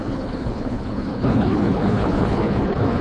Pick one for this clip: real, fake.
fake